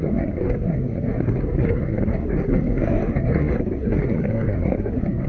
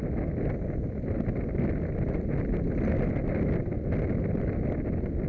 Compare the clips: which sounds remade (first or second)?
first